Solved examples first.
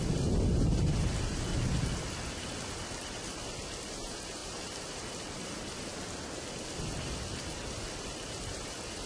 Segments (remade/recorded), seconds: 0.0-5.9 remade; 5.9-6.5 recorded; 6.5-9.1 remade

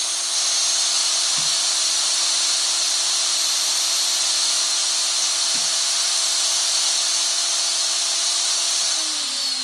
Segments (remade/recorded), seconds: 0.0-1.0 recorded; 1.0-4.0 remade; 4.0-7.4 recorded; 7.4-8.8 remade; 8.8-9.6 recorded

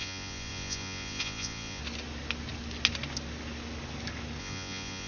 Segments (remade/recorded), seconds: 0.0-1.8 remade; 1.8-4.4 recorded; 4.4-5.1 remade

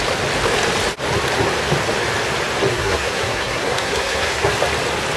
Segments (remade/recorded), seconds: 0.0-2.7 recorded; 2.7-4.5 remade; 4.5-5.2 recorded

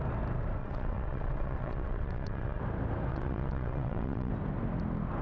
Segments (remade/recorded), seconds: 0.0-0.6 recorded; 0.6-2.6 remade; 2.6-3.1 recorded; 3.1-4.3 remade; 4.3-5.2 recorded

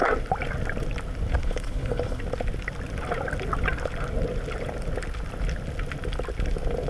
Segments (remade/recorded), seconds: 0.0-1.4 recorded; 1.4-2.2 remade; 2.2-6.9 recorded

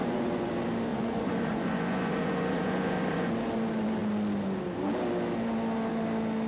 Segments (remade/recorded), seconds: 0.0-0.5 remade; 0.5-0.9 recorded; 0.9-3.3 remade; 3.3-6.5 recorded

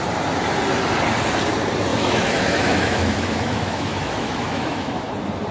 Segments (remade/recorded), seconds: 0.0-1.9 recorded; 1.9-5.1 remade; 5.1-5.5 recorded